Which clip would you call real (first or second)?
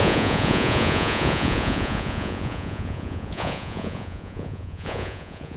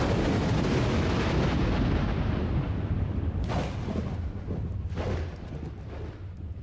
second